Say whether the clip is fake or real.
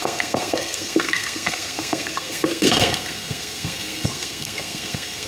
fake